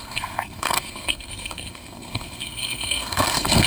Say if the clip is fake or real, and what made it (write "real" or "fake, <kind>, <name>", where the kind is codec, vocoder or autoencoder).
fake, codec, SNAC